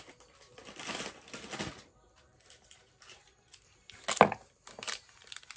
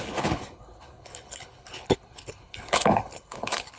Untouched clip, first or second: first